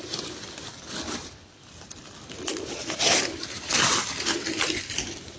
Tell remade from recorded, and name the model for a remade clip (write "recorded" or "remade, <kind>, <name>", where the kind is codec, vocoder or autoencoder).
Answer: recorded